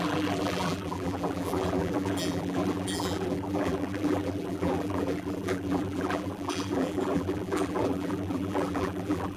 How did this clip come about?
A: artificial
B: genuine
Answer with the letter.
A